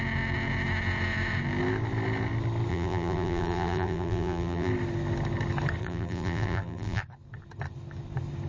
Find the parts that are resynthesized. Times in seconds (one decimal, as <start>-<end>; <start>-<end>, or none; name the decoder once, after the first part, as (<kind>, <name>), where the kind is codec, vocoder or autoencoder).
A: 2.7-4.7 (vocoder, BigVGAN v2); 5.8-7.0